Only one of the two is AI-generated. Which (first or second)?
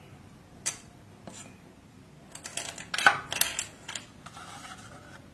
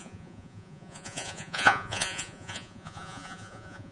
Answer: second